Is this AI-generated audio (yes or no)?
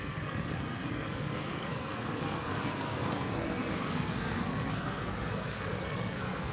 yes